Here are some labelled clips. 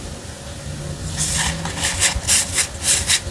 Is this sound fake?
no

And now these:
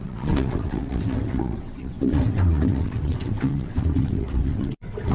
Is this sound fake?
yes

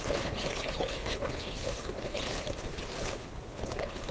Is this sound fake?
yes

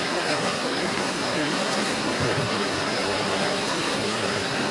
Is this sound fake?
yes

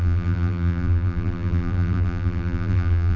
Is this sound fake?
yes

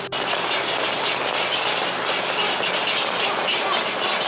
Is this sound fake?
no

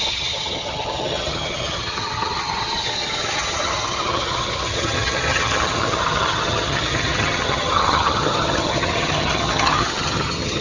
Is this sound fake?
yes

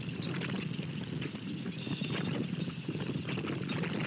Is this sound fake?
no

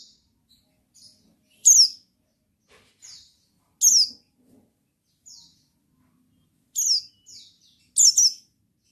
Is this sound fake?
no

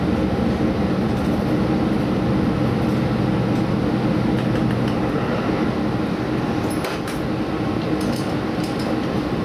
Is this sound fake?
no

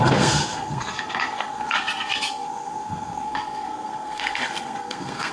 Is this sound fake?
yes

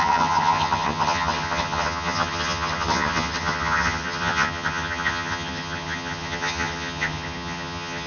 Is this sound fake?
yes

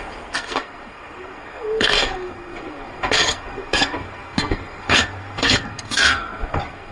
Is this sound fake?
yes